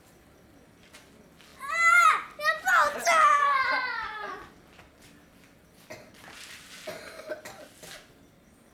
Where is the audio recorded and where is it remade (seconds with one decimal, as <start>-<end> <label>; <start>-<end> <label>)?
0.0-8.7 recorded

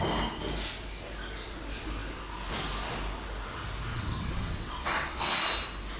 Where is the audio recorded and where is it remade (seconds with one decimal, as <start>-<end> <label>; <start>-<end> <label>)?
0.0-3.9 recorded; 3.9-5.4 remade; 5.4-6.0 recorded

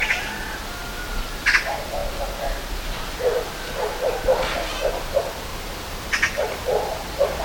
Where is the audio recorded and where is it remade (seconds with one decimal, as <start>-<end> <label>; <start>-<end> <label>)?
0.0-5.5 recorded; 5.5-7.4 remade

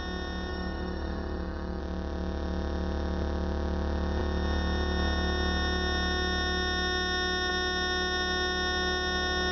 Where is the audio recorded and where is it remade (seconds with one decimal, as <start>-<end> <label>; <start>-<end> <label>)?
0.0-0.5 recorded; 0.5-1.8 remade; 1.8-9.5 recorded

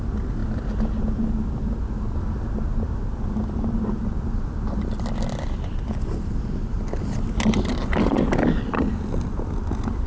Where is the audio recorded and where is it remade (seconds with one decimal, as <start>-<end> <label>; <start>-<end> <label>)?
0.0-10.1 recorded

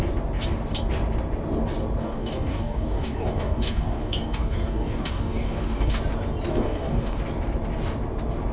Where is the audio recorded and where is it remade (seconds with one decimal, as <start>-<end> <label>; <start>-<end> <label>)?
0.0-2.0 recorded; 2.0-6.0 remade; 6.0-6.5 recorded; 6.5-7.2 remade; 7.2-8.5 recorded